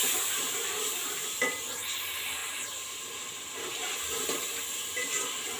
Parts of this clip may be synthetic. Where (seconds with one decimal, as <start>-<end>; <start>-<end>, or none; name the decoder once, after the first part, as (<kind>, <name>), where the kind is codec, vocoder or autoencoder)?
none